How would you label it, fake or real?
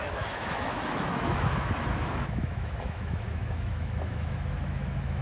fake